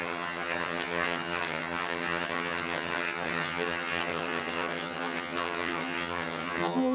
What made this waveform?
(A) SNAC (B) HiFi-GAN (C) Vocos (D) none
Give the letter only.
B